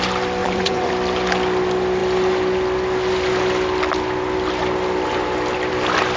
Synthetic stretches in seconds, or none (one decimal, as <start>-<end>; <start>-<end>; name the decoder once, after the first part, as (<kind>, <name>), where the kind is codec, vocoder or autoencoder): 0.4-0.9 (vocoder, Vocos)